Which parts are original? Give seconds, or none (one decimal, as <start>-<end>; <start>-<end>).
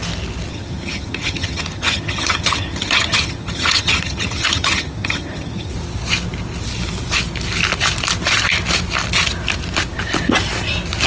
0.0-0.5; 5.7-11.1